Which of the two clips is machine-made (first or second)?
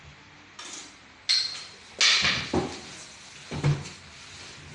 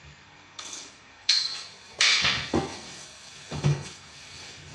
second